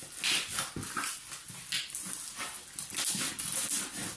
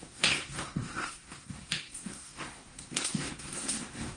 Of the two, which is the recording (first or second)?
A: first